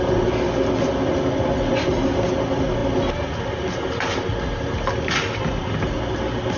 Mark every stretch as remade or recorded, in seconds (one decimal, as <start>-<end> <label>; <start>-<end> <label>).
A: 0.0-6.6 recorded